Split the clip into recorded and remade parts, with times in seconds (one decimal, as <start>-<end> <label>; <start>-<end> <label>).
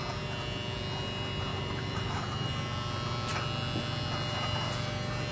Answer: 0.0-1.5 recorded; 1.5-2.5 remade; 2.5-5.3 recorded